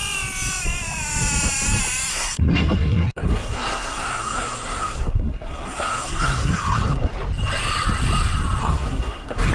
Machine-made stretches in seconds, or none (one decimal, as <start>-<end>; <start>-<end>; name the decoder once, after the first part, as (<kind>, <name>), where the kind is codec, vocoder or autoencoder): 2.1-7.1 (codec, SNAC); 8.6-9.5